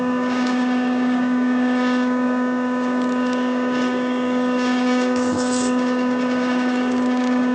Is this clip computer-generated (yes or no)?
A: yes